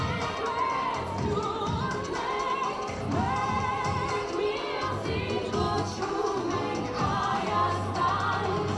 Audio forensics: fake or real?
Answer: real